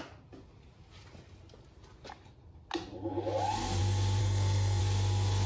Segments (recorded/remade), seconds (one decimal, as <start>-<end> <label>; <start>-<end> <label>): 0.0-4.2 recorded; 4.2-4.8 remade; 4.8-5.5 recorded